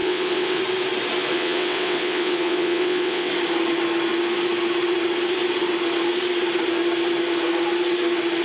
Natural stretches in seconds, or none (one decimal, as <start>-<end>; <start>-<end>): 0.6-1.3; 3.3-8.4